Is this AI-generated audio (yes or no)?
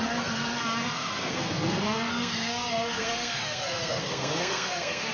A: yes